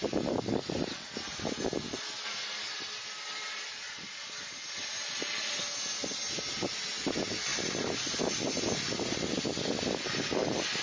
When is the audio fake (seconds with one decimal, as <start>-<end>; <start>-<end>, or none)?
7.5-8.2